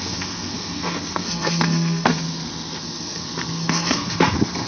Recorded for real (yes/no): no